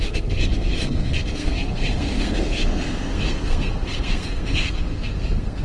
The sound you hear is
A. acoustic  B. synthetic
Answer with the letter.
B